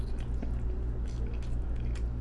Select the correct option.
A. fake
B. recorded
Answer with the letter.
B